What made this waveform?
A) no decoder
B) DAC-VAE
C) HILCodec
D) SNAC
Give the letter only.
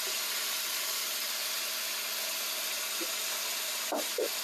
A